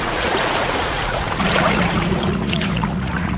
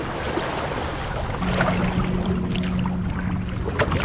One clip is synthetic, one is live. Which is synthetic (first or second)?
first